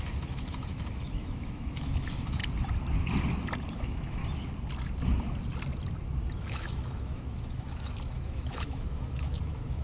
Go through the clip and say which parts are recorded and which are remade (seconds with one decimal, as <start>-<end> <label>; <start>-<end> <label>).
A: 0.0-2.4 remade; 2.4-3.7 recorded; 3.7-4.2 remade; 4.2-6.4 recorded; 6.4-9.8 remade